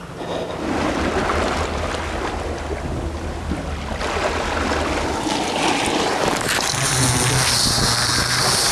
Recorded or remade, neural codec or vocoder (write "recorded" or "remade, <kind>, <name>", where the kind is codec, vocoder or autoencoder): recorded